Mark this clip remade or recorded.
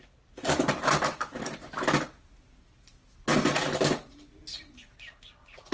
recorded